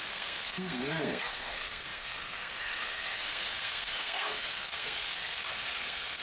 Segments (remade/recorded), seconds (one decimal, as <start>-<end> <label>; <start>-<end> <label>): 0.0-6.2 remade